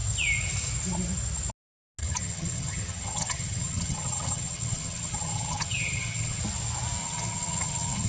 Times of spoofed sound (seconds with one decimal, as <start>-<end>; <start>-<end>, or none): 2.0-6.4; 7.0-8.1